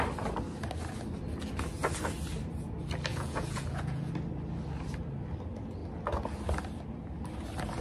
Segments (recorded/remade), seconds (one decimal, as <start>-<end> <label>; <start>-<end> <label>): 0.0-3.1 recorded; 3.1-4.1 remade; 4.1-7.8 recorded